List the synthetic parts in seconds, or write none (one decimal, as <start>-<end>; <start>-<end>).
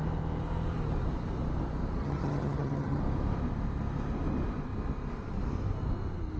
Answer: 2.0-3.0